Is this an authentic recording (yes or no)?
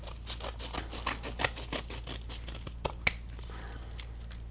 yes